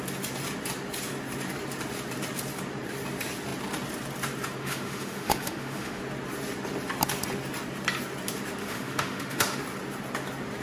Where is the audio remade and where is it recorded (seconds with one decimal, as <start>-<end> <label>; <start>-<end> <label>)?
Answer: 0.0-4.6 recorded; 4.6-6.0 remade; 6.0-8.6 recorded; 8.6-9.6 remade; 9.6-10.6 recorded